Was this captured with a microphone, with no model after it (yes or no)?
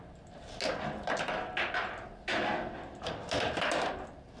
yes